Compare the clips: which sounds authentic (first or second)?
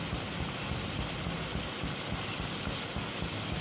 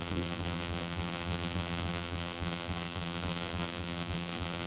first